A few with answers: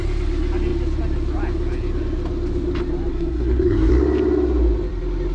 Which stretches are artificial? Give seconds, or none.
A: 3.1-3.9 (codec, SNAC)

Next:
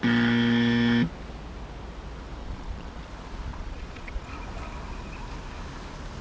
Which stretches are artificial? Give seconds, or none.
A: 2.4-3.1 (vocoder, Vocos); 3.5-4.3

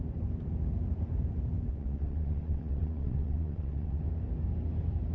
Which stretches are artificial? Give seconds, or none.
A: 1.7-4.0 (vocoder, WaveNeXt)

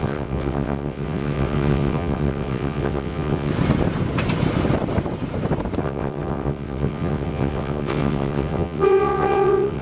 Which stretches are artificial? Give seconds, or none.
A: 0.0-3.5 (vocoder, WaveNeXt); 5.8-9.8

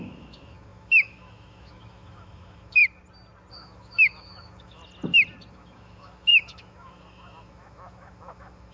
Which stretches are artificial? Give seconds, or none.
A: 0.0-2.8 (autoencoder, DAC-VAE); 3.5-4.8; 5.5-8.7

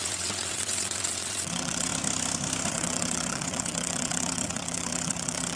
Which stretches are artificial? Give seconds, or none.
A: 0.0-1.9 (vocoder, WaveNeXt); 2.7-5.6

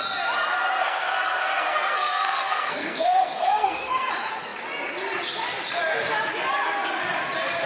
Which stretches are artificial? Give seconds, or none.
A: 0.8-4.1 (codec, SNAC)

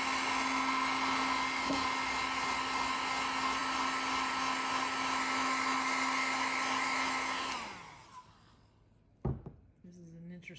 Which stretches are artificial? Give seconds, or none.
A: none